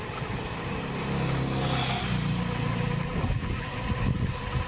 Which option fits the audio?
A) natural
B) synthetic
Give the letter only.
A